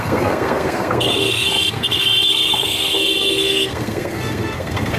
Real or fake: fake